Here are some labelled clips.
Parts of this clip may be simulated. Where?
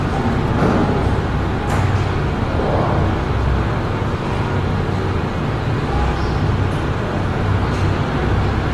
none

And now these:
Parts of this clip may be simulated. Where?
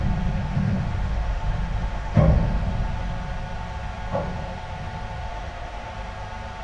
0.4-2.7 (autoencoder, DAC-VAE); 5.3-5.9